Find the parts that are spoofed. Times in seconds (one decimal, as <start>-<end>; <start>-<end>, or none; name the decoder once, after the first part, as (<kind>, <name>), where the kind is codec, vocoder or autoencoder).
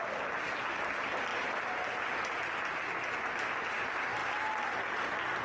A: none